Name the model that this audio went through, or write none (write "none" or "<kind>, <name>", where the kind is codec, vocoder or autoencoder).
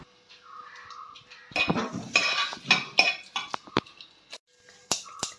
none